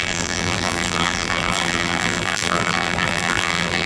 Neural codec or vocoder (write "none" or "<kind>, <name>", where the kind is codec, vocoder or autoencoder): vocoder, BigVGAN v2